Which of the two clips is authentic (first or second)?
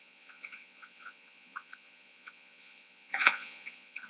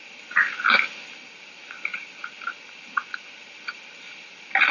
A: second